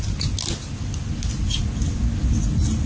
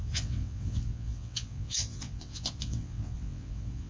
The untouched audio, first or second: first